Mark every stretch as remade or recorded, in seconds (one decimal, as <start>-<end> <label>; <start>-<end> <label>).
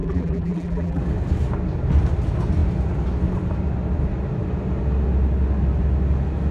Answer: 0.0-1.0 remade; 1.0-6.5 recorded